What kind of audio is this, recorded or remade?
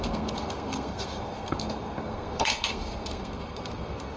remade